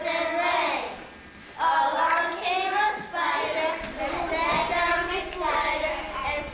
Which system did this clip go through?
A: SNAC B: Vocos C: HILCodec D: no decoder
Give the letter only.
D